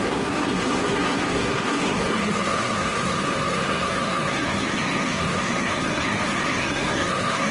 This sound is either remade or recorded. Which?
remade